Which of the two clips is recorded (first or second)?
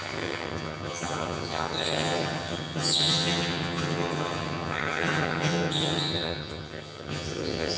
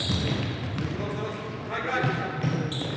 second